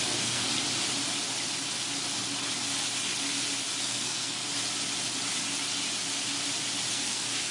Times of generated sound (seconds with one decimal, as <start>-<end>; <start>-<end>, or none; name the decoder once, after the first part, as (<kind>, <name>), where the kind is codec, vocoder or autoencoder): 0.0-0.5 (codec, SNAC); 3.8-4.4; 6.9-7.5

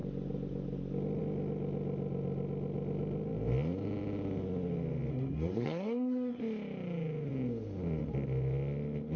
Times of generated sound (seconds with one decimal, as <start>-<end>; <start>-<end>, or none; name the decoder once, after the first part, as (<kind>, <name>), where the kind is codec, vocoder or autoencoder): 5.1-6.4 (codec, SNAC)

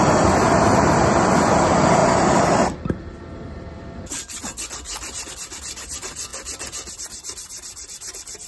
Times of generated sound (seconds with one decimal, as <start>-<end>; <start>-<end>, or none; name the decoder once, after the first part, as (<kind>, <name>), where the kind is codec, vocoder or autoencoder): 0.0-6.3 (vocoder, BigVGAN v2); 6.9-8.5

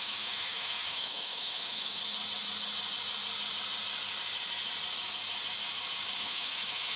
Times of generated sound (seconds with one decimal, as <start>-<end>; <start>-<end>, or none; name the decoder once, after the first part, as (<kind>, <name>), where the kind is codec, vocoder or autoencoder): 0.0-2.0 (autoencoder, DAC-VAE); 6.2-7.0

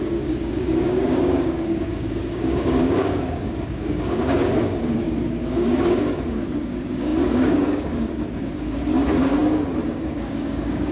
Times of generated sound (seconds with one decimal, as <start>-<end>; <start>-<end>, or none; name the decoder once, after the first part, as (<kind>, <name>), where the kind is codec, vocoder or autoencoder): 0.0-10.9 (codec, DAC)